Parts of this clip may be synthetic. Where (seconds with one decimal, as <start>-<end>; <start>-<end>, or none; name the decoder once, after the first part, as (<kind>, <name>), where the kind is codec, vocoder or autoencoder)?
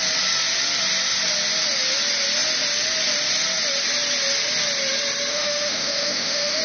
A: 5.3-6.6 (autoencoder, DAC-VAE)